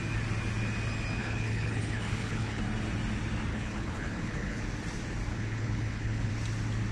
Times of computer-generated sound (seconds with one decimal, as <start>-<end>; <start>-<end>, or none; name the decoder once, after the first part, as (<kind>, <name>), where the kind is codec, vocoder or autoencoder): 1.2-2.6 (codec, HILCodec); 3.5-4.6; 5.3-6.3